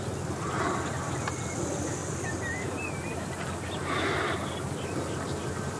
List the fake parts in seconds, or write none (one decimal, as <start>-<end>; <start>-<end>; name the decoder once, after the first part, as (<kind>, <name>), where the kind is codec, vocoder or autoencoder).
none